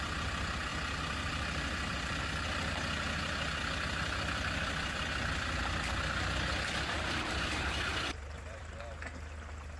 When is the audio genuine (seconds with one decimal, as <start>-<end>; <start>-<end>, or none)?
0.0-0.7; 2.2-7.9; 8.7-9.8